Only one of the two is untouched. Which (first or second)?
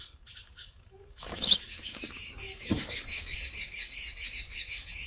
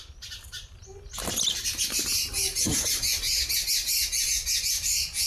second